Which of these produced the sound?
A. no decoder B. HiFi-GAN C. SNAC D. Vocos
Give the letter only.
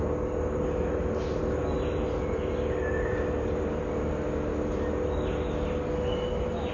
A